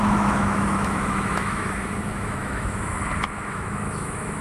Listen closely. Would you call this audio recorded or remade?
remade